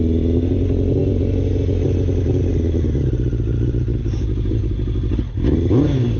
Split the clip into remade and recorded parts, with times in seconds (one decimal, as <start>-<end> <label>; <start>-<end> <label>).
0.0-4.0 recorded; 4.0-4.6 remade; 4.6-6.2 recorded